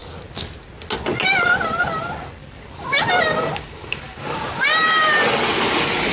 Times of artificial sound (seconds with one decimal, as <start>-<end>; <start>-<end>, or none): none